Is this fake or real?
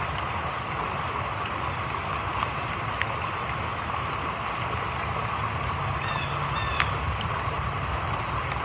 real